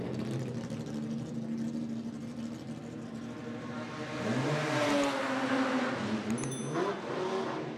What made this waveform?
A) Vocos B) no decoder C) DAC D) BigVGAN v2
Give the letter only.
B